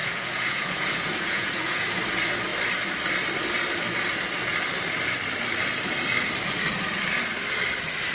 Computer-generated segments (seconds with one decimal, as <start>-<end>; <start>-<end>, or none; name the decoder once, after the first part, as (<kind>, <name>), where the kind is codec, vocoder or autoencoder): 0.0-2.0 (vocoder, Vocos)